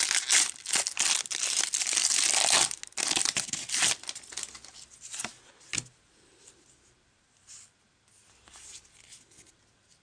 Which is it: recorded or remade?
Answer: recorded